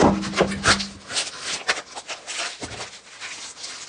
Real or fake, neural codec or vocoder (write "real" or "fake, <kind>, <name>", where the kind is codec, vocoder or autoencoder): real